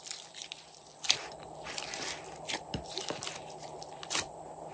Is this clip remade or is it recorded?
remade